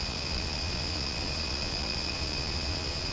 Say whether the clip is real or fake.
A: fake